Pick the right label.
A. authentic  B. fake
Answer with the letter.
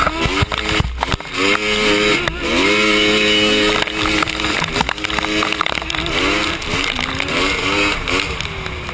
A